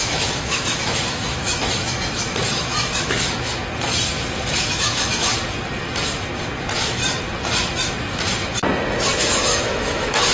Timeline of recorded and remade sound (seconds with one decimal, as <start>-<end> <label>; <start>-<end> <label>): 0.0-3.6 remade; 3.6-4.6 recorded; 4.6-5.3 remade; 5.3-6.6 recorded; 6.6-7.0 remade; 7.0-9.2 recorded; 9.2-10.3 remade